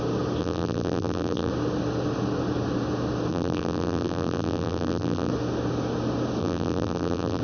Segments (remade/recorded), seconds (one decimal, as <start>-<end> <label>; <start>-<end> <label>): 0.0-0.4 recorded; 0.4-1.5 remade; 1.5-3.3 recorded; 3.3-5.3 remade; 5.3-6.4 recorded; 6.4-7.4 remade